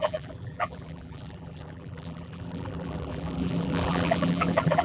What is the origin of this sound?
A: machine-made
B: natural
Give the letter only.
A